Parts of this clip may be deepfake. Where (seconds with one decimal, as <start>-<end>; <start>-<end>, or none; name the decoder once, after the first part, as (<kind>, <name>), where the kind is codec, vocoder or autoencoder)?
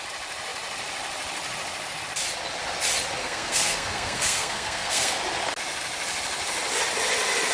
3.2-5.2 (codec, SNAC)